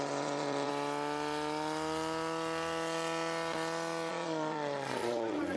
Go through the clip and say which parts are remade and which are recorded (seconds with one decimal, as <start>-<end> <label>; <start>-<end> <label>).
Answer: 0.0-0.7 remade; 0.7-4.1 recorded; 4.1-5.6 remade